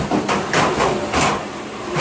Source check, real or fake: real